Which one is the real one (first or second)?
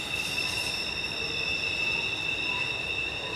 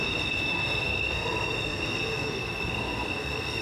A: first